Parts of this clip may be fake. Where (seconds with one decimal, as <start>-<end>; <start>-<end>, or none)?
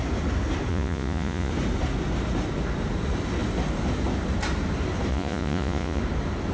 0.7-1.5; 5.1-6.0